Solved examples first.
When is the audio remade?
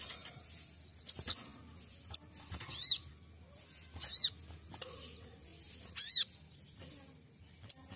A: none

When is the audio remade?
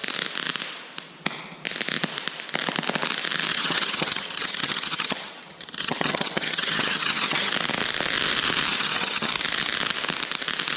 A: 3.5-7.5 (vocoder, HiFi-GAN); 8.7-9.3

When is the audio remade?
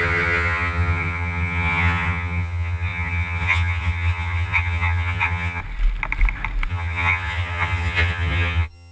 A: 0.0-5.6 (vocoder, HiFi-GAN); 6.7-8.9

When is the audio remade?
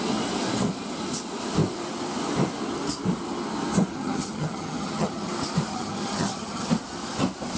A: 3.9-5.3 (vocoder, HiFi-GAN); 5.7-6.7